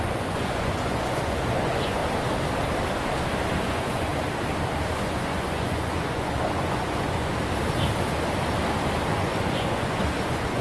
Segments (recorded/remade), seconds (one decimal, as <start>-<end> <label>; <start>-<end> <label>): 0.0-2.0 remade; 2.0-3.6 recorded; 3.6-4.1 remade; 4.1-4.9 recorded; 4.9-7.3 remade; 7.3-9.1 recorded; 9.1-10.6 remade